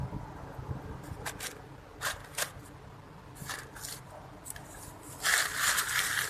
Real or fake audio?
real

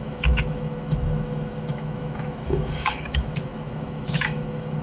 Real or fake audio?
fake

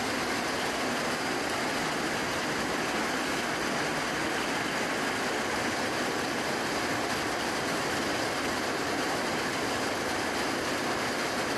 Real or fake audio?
real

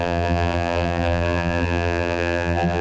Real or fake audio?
fake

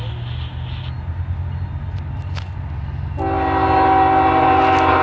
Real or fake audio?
real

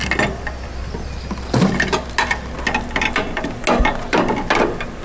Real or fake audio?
real